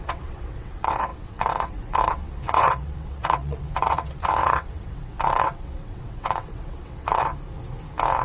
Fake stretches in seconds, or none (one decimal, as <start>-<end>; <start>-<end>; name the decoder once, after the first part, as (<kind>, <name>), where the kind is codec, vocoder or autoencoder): 0.0-7.3 (vocoder, WaveNeXt)